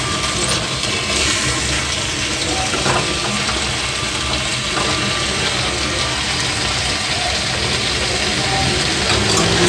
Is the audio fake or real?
real